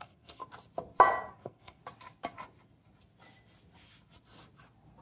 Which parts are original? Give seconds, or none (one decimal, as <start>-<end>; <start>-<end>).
0.4-1.3; 1.8-5.0